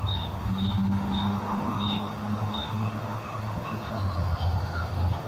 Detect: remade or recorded remade